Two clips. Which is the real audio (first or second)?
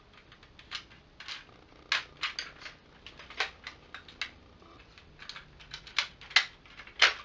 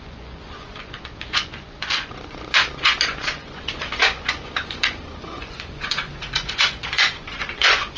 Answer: first